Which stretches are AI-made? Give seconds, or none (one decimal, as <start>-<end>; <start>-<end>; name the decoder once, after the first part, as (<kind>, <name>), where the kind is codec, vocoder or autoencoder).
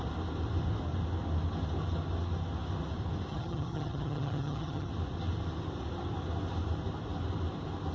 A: 3.3-4.9 (vocoder, HiFi-GAN)